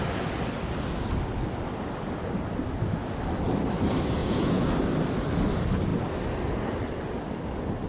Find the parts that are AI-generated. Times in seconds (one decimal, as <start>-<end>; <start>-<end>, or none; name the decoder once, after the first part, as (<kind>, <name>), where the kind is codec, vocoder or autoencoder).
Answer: 4.2-4.7 (vocoder, Vocos)